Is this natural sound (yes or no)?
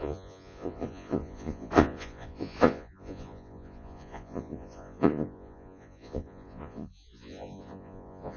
no